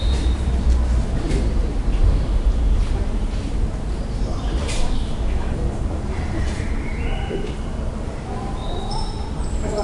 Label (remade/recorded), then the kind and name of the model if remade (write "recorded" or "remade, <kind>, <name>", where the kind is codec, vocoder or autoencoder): remade, vocoder, BigVGAN v2